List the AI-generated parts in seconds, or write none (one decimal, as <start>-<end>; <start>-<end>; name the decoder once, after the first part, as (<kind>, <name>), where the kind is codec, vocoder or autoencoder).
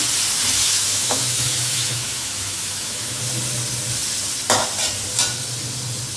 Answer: 0.6-3.2 (autoencoder, DAC-VAE)